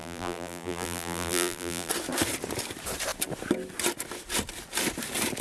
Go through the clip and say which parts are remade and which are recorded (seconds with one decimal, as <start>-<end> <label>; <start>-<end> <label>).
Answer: 0.0-1.9 remade; 1.9-5.4 recorded